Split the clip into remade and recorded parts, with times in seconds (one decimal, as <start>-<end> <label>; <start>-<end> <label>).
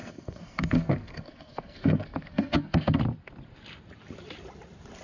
0.0-3.0 remade; 3.0-5.0 recorded